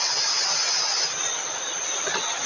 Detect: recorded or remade recorded